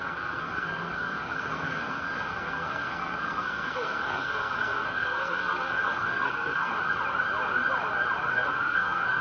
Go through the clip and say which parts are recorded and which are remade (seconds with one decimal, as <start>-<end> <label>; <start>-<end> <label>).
0.0-6.7 remade; 6.7-8.3 recorded; 8.3-9.2 remade